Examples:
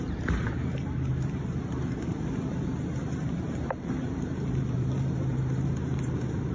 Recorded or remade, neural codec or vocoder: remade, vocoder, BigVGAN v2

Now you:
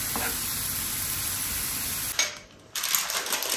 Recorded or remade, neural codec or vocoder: recorded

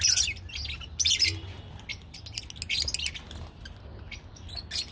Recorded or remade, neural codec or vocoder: recorded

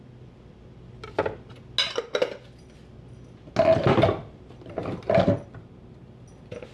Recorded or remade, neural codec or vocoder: recorded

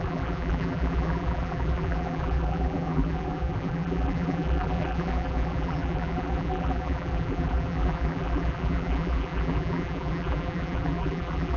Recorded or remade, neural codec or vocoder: remade, vocoder, BigVGAN v2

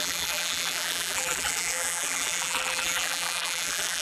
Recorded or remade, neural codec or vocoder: remade, vocoder, BigVGAN v2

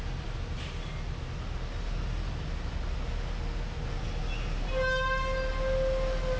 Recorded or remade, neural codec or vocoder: recorded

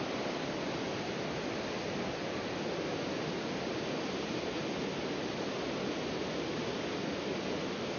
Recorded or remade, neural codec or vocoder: recorded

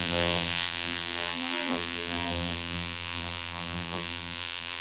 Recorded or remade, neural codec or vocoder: remade, vocoder, BigVGAN v2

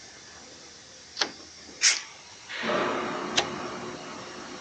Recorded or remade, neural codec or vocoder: recorded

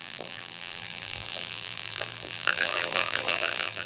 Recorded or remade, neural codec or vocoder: remade, vocoder, BigVGAN v2